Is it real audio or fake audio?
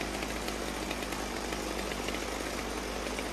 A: real